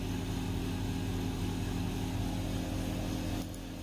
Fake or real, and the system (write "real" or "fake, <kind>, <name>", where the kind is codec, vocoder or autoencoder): real